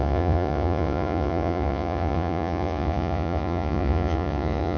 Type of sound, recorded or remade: remade